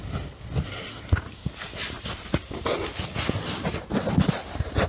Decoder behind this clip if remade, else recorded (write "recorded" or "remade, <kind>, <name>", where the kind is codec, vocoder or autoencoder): recorded